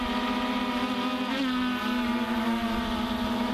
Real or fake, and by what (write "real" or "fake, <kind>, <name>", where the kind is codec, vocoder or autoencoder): real